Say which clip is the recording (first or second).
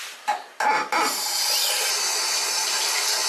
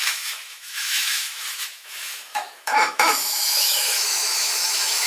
first